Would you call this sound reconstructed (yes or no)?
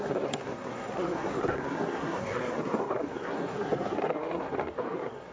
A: yes